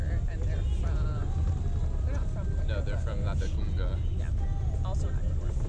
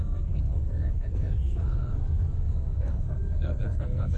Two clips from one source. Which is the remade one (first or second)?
second